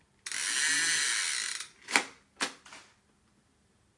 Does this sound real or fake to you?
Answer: real